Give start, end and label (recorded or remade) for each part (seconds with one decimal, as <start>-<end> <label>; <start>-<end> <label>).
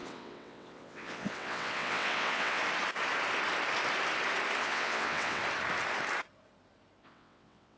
0.0-2.6 remade; 2.6-4.6 recorded; 4.6-5.4 remade; 5.4-7.0 recorded; 7.0-7.8 remade